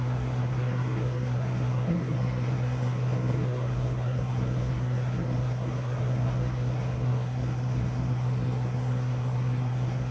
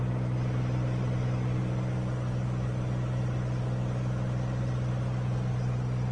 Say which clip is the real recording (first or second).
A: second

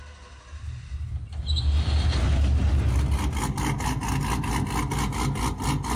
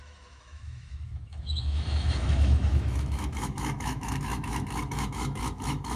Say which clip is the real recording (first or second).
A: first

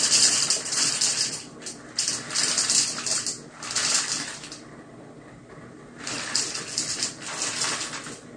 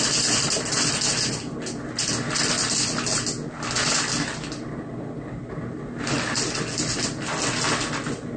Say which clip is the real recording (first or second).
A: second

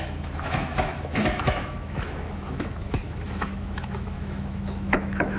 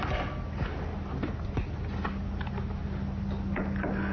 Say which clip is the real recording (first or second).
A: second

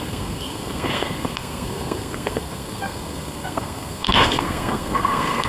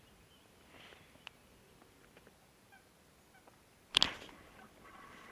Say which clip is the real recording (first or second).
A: second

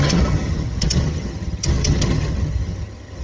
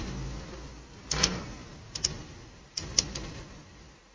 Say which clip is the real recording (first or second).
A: second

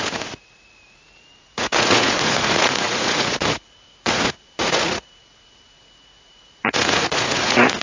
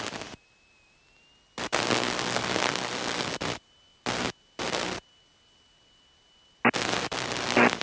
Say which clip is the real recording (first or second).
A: second